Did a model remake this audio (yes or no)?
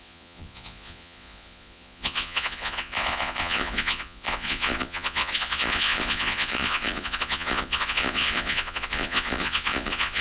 yes